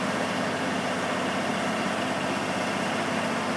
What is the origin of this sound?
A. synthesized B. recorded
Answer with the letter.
B